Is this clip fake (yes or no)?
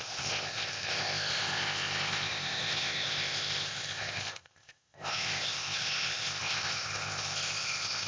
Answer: yes